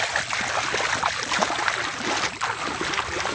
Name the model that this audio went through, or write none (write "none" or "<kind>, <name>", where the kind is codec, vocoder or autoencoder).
none